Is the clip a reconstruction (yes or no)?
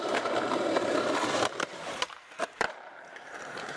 yes